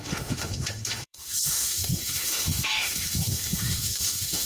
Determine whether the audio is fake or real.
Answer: fake